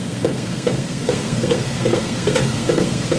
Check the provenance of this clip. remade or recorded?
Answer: remade